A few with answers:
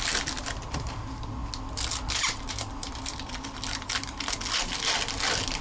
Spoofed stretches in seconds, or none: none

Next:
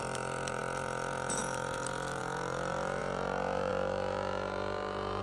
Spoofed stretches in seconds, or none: 0.0-5.2 (vocoder, BigVGAN v2)